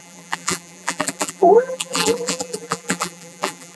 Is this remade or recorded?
remade